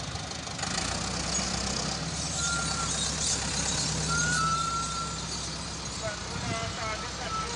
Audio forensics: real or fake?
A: real